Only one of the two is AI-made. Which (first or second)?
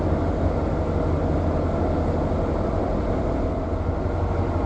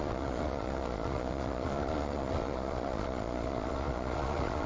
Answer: second